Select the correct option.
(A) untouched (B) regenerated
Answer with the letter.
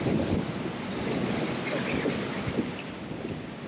A